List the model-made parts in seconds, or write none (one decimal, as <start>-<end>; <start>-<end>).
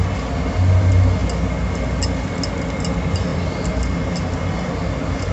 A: none